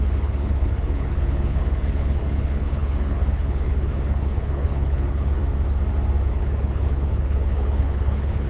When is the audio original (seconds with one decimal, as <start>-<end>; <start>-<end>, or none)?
5.4-6.3